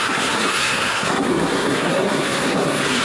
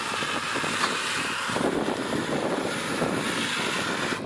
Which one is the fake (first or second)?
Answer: first